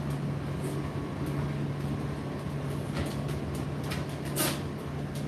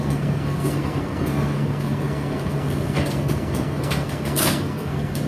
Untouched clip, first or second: first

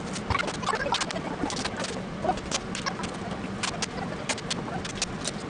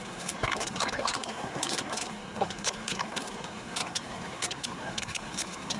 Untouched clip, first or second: first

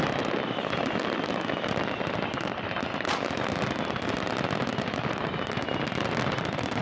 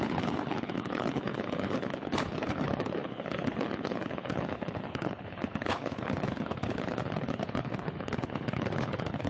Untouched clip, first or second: first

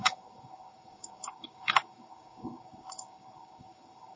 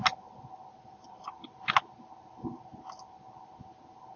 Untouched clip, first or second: second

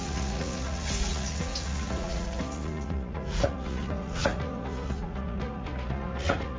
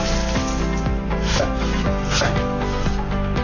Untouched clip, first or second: second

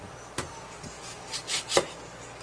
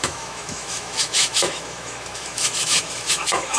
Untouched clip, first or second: first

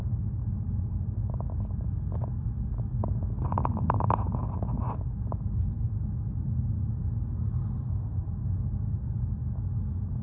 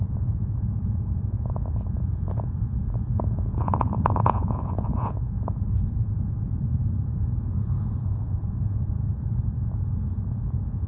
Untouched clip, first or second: first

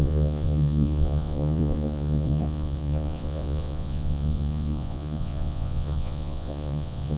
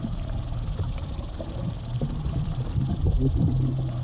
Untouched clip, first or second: second